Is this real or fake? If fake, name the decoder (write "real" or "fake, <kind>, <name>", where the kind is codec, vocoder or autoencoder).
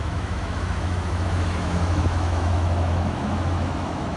fake, autoencoder, DAC-VAE